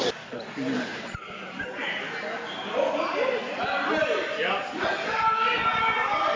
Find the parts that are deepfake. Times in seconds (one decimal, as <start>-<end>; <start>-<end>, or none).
none